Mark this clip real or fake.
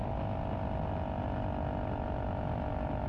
real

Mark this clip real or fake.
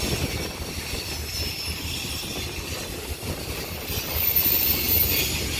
real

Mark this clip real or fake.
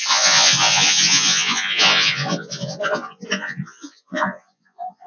fake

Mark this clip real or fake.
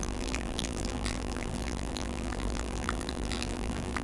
fake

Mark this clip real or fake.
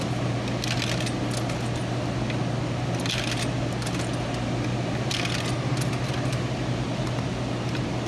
real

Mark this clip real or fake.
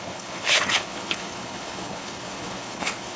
fake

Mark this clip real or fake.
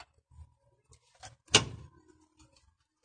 real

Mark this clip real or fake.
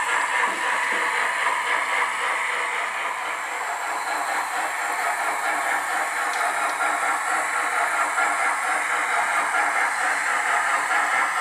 real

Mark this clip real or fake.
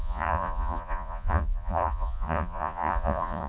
fake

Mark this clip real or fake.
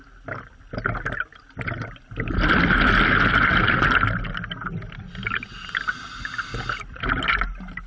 real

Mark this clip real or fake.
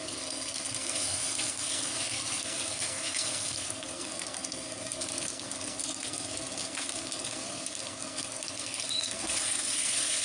fake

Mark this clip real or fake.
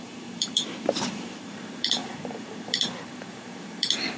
fake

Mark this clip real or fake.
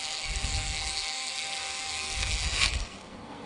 fake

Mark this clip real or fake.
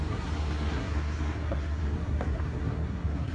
fake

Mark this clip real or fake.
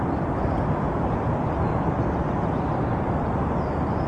real